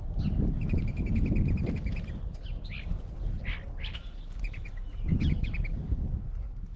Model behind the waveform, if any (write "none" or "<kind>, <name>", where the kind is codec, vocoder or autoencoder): none